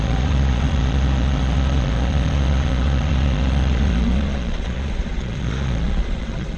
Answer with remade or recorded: remade